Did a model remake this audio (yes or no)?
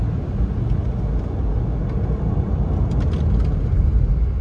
no